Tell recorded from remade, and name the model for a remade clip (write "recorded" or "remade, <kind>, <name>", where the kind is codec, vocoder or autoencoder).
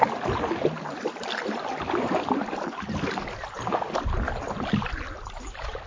recorded